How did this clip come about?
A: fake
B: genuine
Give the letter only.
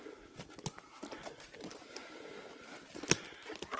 B